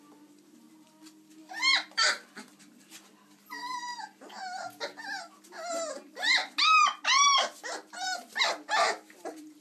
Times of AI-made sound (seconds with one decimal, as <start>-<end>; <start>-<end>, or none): 1.4-2.7